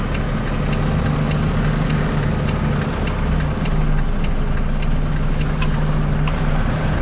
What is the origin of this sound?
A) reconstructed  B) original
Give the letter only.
B